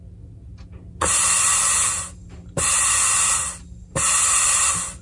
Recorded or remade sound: recorded